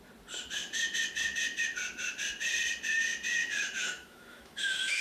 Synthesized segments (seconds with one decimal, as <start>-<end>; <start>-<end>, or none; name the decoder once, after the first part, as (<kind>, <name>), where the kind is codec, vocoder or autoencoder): 3.4-5.0 (autoencoder, DAC-VAE)